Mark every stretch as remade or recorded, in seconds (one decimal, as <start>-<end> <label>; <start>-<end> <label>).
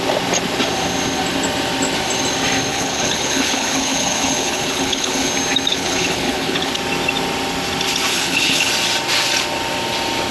0.0-2.7 recorded; 2.7-5.3 remade; 5.3-5.7 recorded; 5.7-6.7 remade; 6.7-8.1 recorded; 8.1-8.7 remade; 8.7-10.3 recorded